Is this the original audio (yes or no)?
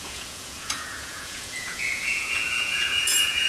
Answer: no